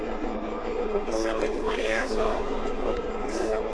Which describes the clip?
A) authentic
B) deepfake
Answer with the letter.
B